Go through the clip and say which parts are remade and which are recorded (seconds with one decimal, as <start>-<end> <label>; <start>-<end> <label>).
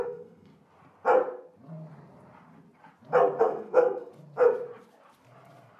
0.0-0.5 remade; 0.5-3.4 recorded; 3.4-4.1 remade; 4.1-5.8 recorded